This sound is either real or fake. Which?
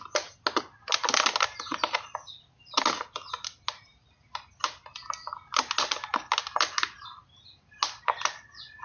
real